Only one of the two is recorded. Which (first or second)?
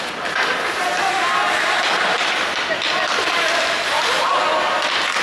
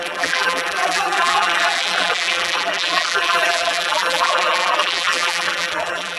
first